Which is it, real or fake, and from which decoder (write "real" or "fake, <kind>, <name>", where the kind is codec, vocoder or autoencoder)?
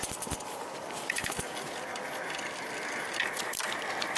fake, vocoder, BigVGAN v2